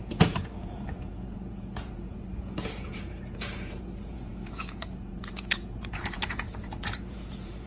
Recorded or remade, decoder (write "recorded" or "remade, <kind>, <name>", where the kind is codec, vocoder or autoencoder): remade, vocoder, Vocos